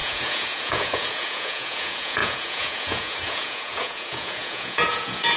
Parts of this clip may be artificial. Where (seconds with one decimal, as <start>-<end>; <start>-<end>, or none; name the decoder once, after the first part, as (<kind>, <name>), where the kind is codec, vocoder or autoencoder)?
0.0-5.4 (vocoder, Vocos)

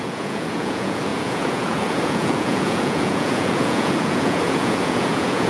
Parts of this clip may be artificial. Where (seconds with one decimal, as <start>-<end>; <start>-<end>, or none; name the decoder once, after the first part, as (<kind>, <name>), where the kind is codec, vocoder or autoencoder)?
0.0-5.5 (vocoder, Vocos)

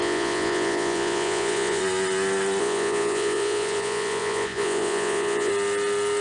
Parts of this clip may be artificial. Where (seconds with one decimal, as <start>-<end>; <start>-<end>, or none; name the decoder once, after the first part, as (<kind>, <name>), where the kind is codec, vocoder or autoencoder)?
0.0-1.8 (vocoder, Vocos); 2.6-5.5

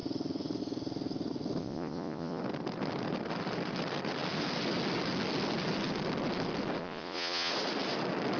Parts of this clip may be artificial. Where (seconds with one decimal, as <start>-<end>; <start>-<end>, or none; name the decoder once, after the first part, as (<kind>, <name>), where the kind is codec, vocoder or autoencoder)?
1.6-2.4 (vocoder, Vocos); 6.8-7.5

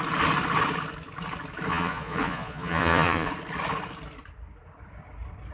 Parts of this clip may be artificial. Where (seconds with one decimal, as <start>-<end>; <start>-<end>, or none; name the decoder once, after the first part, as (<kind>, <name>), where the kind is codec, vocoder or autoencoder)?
1.7-3.3 (vocoder, Vocos)

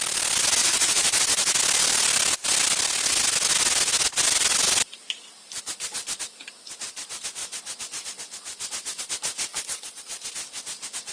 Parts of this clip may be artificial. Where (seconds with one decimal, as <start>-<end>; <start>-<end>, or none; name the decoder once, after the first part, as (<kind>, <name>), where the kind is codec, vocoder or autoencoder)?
0.6-1.2 (vocoder, Vocos); 9.5-10.3